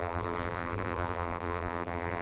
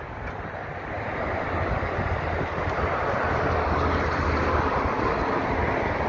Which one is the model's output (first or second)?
first